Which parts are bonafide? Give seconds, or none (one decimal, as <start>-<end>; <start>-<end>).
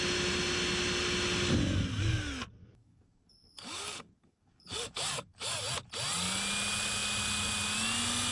0.0-2.6; 5.6-8.3